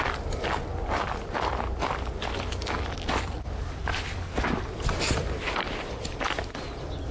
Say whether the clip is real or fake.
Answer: real